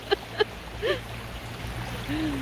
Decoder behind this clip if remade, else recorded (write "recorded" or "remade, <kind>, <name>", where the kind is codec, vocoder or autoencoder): recorded